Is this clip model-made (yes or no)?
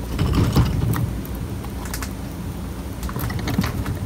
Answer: no